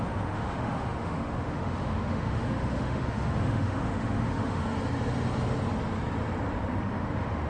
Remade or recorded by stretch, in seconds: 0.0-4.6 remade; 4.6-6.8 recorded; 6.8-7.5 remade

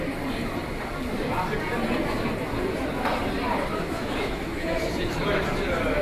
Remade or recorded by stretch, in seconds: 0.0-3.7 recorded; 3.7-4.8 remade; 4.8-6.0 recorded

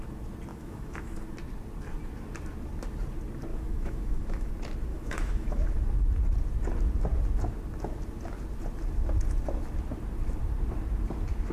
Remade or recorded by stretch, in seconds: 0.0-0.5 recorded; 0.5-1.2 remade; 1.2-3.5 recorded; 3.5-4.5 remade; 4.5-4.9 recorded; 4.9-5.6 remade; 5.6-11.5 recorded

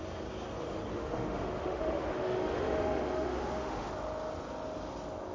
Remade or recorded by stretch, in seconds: 0.0-0.9 recorded; 0.9-3.9 remade; 3.9-5.3 recorded

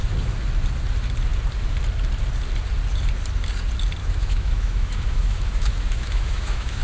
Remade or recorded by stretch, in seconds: 0.0-4.0 recorded; 4.0-6.8 remade